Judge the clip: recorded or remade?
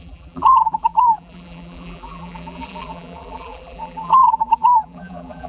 remade